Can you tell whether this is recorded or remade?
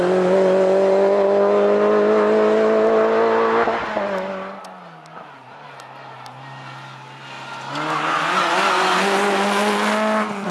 recorded